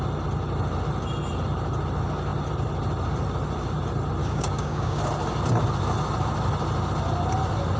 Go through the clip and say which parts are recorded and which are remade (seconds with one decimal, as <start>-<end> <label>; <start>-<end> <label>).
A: 0.0-4.2 recorded; 4.2-5.0 remade; 5.0-7.8 recorded